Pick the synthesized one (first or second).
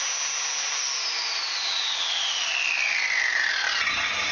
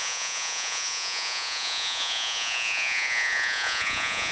second